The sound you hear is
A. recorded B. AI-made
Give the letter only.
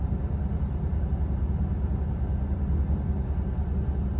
A